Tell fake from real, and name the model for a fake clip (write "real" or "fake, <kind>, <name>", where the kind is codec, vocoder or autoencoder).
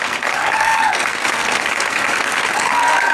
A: fake, codec, SNAC